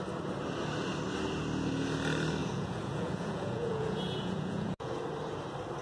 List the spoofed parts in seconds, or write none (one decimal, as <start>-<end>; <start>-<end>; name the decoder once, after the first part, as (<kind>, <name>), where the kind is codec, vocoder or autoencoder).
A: 2.4-4.9 (vocoder, Vocos)